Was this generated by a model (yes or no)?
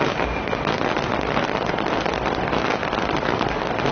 no